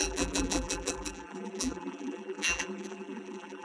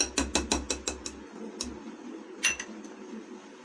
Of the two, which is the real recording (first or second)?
second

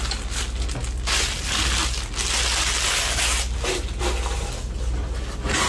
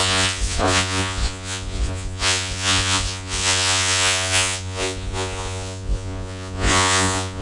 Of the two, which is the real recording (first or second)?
first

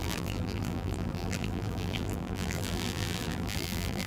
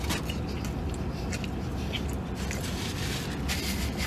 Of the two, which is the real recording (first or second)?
second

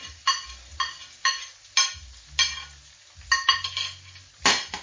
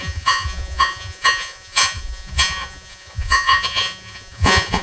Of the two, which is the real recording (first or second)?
first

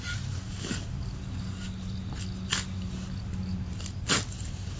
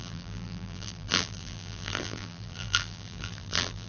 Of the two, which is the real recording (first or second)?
first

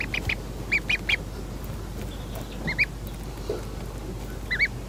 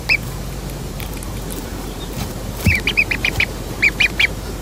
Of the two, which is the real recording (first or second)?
first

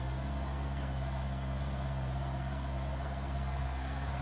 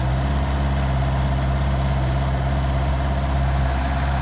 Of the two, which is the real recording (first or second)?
second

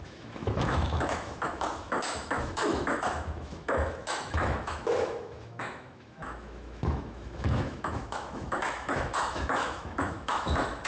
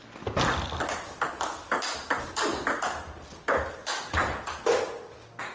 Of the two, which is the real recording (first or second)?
second